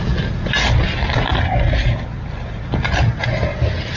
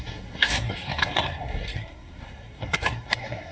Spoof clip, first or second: second